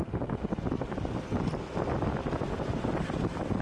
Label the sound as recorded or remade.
recorded